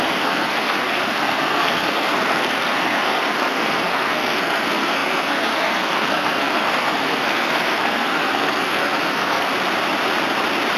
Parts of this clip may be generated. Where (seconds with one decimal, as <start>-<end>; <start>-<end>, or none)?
0.0-9.5